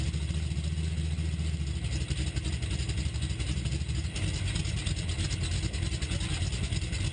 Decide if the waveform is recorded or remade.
recorded